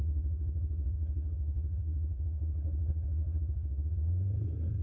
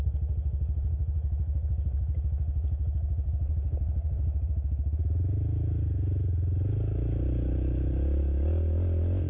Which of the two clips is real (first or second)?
second